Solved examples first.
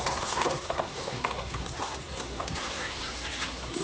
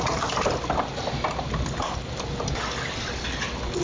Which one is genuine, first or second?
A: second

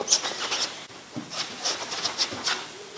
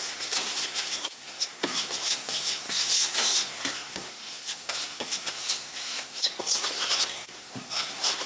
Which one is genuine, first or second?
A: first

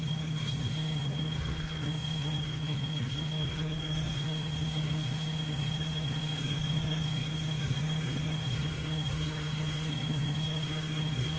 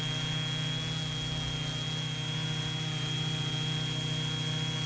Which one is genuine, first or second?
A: second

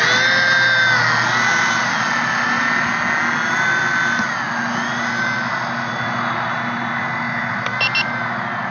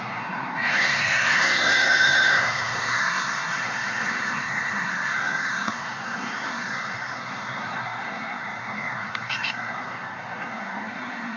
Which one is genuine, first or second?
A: first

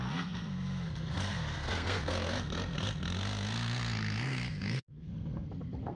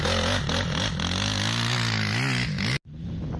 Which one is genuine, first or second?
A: second